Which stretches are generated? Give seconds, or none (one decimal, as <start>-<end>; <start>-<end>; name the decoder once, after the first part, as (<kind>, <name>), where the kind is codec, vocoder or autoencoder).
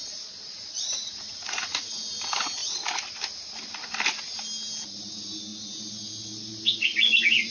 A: 0.5-1.9 (vocoder, Vocos)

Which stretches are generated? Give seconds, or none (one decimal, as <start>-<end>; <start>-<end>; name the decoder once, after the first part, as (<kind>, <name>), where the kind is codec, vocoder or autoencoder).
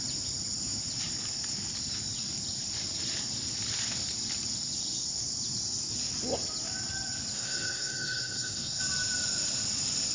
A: 7.3-8.8 (codec, SNAC)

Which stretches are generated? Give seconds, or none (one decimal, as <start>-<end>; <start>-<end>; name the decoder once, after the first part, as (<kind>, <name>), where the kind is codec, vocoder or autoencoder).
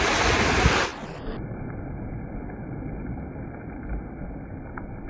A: none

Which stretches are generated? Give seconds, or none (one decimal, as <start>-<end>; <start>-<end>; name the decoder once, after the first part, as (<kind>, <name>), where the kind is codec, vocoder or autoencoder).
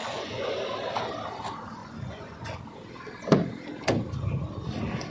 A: 0.0-0.6 (vocoder, Vocos); 1.8-2.6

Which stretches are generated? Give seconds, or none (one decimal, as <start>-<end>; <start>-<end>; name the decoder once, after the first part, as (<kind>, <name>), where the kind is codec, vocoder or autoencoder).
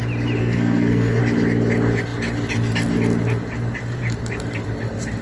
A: 0.4-1.2 (codec, SNAC)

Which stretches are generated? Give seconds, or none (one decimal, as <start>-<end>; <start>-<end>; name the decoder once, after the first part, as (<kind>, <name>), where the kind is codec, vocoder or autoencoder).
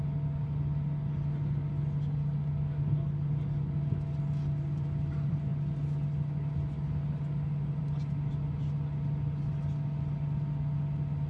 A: none